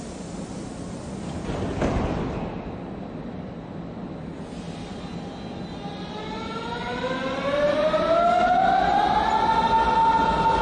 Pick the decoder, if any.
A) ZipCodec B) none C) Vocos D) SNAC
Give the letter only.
B